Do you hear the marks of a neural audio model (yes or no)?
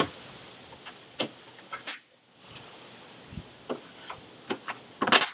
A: no